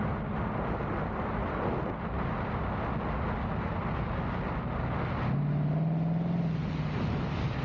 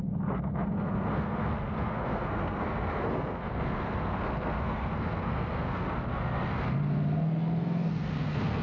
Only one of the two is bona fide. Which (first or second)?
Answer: first